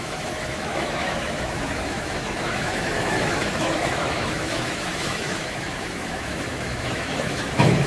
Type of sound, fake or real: fake